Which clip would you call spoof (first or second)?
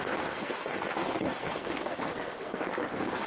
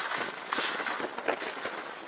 first